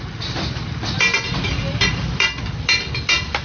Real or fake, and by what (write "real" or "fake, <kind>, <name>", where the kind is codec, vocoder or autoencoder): real